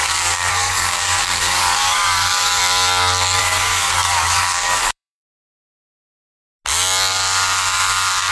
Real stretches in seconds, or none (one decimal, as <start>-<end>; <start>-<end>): 2.6-3.4; 5.7-7.1